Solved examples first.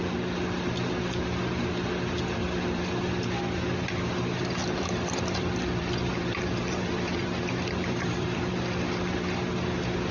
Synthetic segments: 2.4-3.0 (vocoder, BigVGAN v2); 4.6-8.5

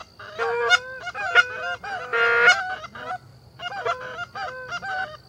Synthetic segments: 3.3-4.0 (vocoder, BigVGAN v2)

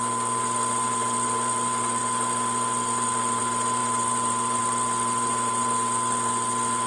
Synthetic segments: none

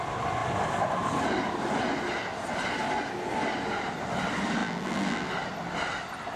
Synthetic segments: 4.6-5.3 (vocoder, BigVGAN v2)

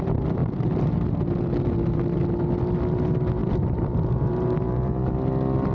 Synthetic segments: 3.4-5.0 (vocoder, BigVGAN v2)

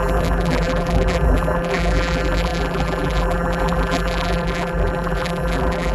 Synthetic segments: 0.0-5.9 (vocoder, BigVGAN v2)